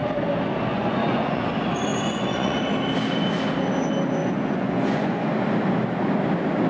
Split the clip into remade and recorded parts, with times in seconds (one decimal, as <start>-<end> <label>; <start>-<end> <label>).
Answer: 0.0-0.7 recorded; 0.7-1.4 remade; 1.4-1.9 recorded; 1.9-2.6 remade; 2.6-4.2 recorded; 4.2-5.3 remade; 5.3-6.7 recorded